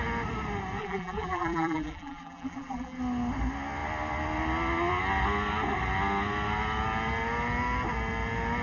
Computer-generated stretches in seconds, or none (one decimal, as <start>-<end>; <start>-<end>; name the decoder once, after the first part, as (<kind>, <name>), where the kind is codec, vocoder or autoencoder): 0.8-3.0 (vocoder, BigVGAN v2)